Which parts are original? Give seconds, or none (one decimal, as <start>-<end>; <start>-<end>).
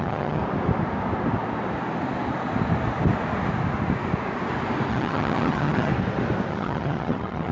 0.4-4.9; 5.9-6.5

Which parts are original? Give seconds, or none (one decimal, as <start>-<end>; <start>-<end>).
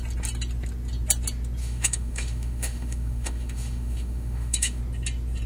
0.0-1.6; 4.8-5.5